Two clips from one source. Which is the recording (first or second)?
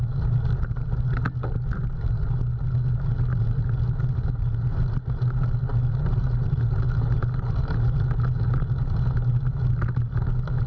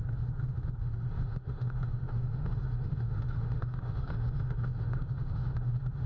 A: first